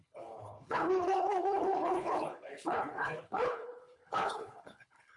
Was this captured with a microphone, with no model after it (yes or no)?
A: no